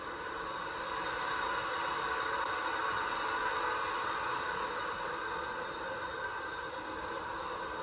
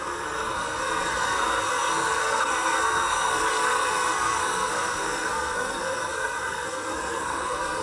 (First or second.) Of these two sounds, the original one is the first